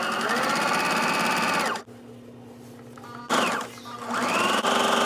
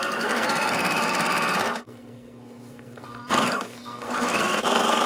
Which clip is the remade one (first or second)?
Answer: second